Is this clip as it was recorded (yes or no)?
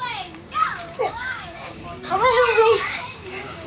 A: no